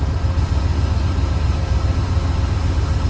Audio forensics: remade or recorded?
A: recorded